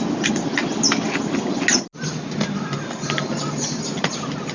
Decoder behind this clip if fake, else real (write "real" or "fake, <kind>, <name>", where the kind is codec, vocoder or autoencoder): real